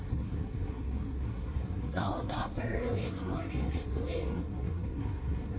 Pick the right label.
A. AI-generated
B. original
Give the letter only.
A